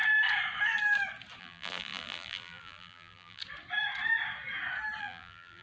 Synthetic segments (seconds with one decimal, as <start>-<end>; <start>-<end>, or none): 1.4-3.4; 5.0-5.6